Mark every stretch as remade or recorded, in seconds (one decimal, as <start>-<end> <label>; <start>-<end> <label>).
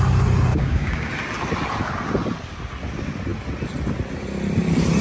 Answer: 0.0-0.5 recorded; 0.5-1.1 remade; 1.1-5.0 recorded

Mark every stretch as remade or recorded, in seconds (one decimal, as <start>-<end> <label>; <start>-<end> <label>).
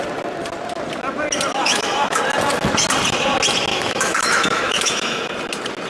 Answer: 0.0-1.6 recorded; 1.6-2.2 remade; 2.2-3.7 recorded; 3.7-5.3 remade; 5.3-5.9 recorded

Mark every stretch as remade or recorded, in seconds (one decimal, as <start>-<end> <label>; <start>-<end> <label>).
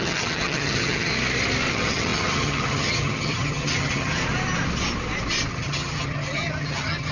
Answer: 0.0-1.1 remade; 1.1-1.7 recorded; 1.7-4.2 remade; 4.2-5.5 recorded; 5.5-7.1 remade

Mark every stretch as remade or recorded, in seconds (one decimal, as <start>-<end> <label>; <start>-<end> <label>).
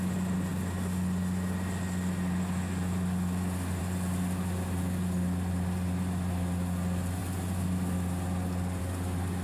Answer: 0.0-9.4 recorded